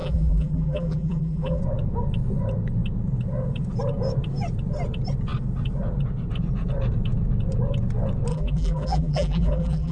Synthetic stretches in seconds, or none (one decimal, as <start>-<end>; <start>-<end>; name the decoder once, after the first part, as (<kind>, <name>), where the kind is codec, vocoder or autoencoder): 0.0-1.6 (vocoder, BigVGAN v2); 8.3-9.9